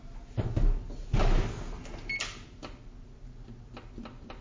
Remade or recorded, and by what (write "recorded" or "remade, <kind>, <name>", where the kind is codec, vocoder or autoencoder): recorded